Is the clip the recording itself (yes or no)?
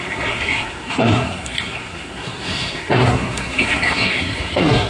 no